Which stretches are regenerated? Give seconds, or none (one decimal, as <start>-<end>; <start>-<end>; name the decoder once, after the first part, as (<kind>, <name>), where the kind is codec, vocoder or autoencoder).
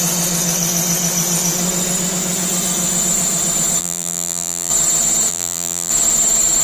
3.8-4.7 (vocoder, BigVGAN v2); 5.3-5.9